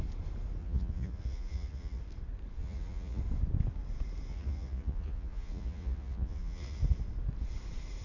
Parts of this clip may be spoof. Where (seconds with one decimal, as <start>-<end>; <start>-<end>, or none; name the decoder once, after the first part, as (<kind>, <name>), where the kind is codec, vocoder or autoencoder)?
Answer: 0.6-2.0 (vocoder, Vocos); 2.6-3.2; 4.3-6.8